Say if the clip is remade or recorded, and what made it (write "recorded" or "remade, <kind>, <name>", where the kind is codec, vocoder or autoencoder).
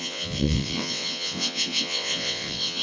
remade, vocoder, WaveNeXt